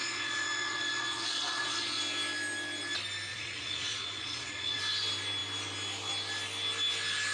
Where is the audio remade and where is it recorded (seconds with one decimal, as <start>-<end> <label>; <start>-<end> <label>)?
0.0-2.0 remade; 2.0-3.3 recorded; 3.3-4.8 remade; 4.8-7.3 recorded